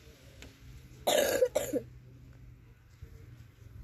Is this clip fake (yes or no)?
no